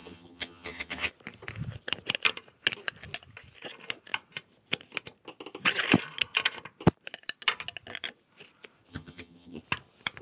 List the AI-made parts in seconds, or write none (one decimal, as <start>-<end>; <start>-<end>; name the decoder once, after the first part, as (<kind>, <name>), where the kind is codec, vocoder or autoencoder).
0.0-1.1 (vocoder, HiFi-GAN); 8.9-9.6